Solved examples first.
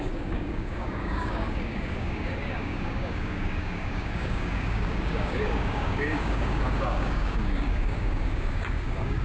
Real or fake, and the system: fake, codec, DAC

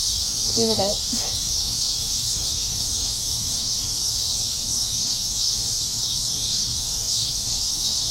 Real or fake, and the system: fake, codec, DAC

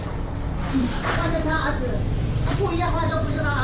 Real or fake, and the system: real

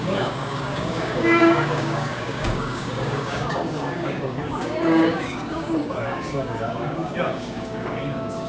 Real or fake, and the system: fake, codec, DAC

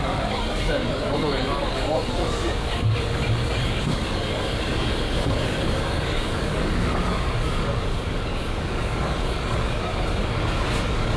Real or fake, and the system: fake, codec, DAC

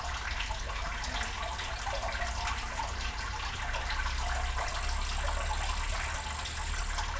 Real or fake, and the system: real